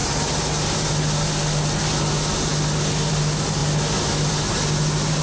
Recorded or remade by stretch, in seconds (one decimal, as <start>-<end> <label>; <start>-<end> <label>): 0.0-5.2 recorded